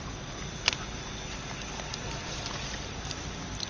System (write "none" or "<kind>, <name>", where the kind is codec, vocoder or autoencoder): none